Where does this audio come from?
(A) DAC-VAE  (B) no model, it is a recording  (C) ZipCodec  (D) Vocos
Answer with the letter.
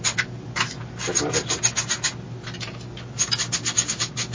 B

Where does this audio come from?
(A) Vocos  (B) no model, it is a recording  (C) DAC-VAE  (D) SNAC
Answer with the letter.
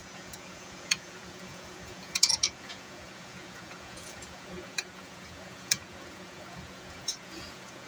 A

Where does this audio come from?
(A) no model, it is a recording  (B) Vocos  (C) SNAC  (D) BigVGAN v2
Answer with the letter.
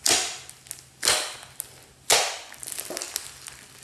A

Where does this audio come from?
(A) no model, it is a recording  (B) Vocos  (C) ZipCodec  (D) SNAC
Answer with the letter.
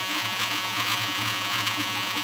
B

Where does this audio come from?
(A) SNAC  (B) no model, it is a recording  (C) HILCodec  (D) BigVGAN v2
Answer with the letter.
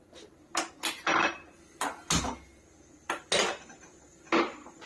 B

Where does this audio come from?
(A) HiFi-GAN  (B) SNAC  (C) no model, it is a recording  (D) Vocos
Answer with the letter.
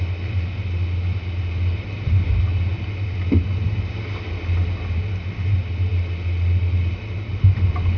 C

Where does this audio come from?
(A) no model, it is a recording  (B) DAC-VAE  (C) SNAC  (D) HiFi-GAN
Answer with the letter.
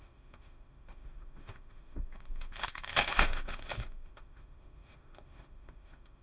B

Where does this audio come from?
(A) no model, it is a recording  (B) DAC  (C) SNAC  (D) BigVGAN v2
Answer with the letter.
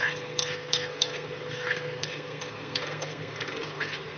C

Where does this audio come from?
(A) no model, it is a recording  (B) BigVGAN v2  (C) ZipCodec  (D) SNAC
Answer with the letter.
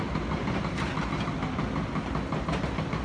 A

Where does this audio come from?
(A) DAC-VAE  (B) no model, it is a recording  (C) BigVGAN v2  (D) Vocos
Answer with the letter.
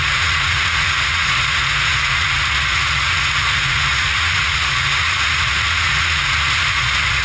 D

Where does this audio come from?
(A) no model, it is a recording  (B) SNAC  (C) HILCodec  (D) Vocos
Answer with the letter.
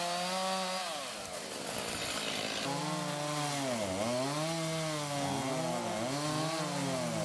A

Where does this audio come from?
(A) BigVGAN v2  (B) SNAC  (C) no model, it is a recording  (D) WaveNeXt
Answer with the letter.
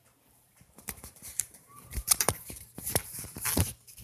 A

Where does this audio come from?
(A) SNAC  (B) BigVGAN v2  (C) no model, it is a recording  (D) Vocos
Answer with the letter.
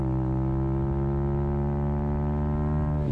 C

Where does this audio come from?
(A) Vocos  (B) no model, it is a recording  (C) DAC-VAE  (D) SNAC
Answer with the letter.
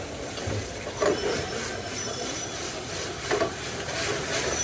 B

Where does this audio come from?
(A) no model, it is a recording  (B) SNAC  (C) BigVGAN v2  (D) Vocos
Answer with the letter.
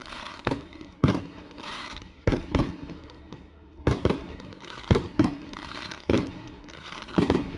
B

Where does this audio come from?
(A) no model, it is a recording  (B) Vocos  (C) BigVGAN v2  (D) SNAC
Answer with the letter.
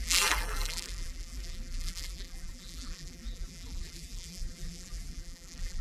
C